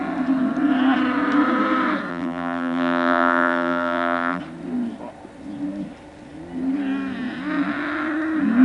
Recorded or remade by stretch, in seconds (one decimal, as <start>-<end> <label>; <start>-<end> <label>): 0.0-2.1 recorded; 2.1-4.4 remade; 4.4-8.6 recorded